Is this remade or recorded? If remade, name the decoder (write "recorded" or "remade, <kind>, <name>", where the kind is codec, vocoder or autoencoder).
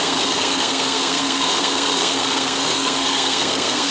remade, codec, SNAC